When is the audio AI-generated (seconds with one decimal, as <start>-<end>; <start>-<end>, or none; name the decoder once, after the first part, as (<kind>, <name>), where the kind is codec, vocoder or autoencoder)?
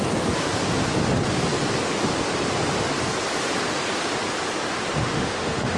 5.0-5.8 (autoencoder, DAC-VAE)